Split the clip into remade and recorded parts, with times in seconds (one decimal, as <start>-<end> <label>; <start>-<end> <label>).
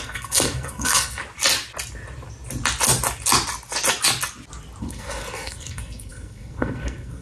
0.0-1.2 remade; 1.2-4.8 recorded; 4.8-7.2 remade